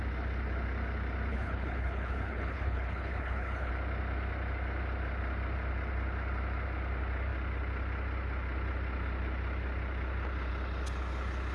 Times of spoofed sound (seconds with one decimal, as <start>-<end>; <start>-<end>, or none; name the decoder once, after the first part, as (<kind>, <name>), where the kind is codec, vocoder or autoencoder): 1.3-3.7 (codec, HILCodec)